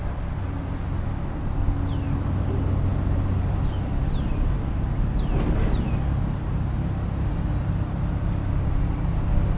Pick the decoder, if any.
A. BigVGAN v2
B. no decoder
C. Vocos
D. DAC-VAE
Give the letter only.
B